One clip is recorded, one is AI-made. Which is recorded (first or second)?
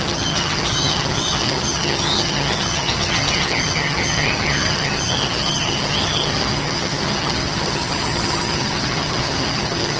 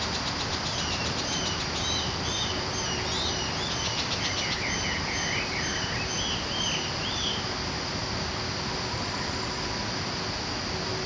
second